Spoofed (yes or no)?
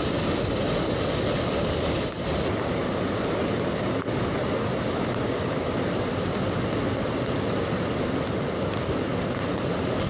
no